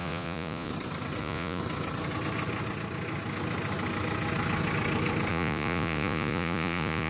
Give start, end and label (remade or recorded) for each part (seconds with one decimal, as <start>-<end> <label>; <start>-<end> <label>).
0.0-0.7 remade; 0.7-1.2 recorded; 1.2-1.6 remade; 1.6-5.3 recorded; 5.3-7.1 remade